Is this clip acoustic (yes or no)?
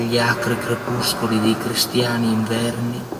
yes